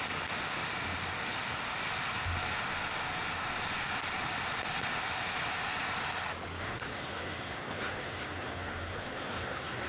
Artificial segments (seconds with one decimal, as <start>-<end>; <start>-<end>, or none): 6.6-9.9